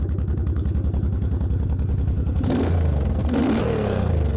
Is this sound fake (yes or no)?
yes